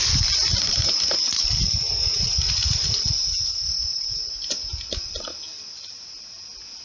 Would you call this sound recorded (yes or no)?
yes